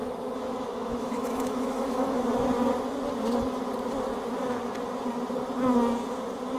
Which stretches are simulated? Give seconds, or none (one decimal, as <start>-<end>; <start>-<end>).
0.0-2.3